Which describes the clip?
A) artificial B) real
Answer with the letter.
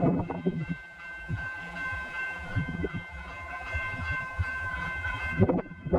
A